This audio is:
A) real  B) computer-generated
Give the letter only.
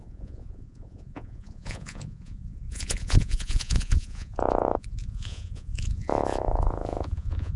B